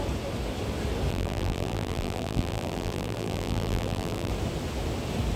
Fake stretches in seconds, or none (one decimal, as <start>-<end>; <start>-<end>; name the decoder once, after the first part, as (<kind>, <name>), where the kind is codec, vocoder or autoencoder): 1.1-4.3 (vocoder, BigVGAN v2)